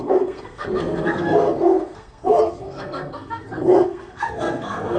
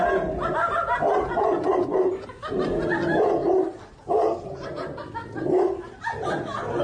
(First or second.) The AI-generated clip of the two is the first